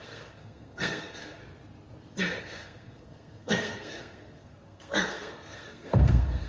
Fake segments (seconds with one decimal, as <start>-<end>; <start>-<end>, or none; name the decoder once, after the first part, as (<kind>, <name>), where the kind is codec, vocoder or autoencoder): 0.0-1.4 (codec, SNAC); 2.4-6.5